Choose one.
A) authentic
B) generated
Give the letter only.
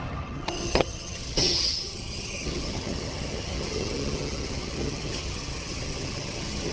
B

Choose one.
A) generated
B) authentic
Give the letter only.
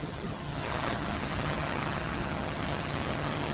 A